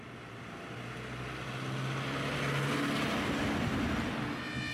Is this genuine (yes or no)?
yes